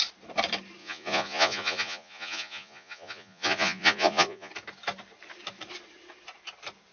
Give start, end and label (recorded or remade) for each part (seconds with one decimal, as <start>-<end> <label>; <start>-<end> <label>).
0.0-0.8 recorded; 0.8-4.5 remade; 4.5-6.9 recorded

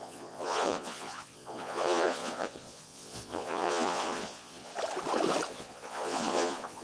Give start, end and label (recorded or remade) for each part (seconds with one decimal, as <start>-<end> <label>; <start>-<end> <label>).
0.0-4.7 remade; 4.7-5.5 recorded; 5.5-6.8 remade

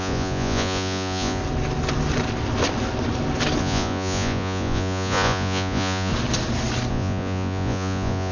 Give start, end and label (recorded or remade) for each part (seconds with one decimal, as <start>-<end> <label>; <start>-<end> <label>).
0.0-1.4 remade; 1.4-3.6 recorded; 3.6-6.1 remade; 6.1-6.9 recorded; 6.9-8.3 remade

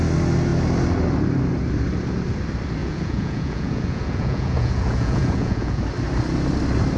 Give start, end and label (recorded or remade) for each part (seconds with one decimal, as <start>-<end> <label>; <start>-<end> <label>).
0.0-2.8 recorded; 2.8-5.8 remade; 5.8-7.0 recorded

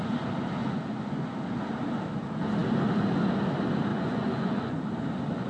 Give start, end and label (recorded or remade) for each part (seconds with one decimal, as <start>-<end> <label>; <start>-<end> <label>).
0.0-0.6 recorded; 0.6-1.3 remade; 1.3-3.9 recorded; 3.9-4.8 remade; 4.8-5.5 recorded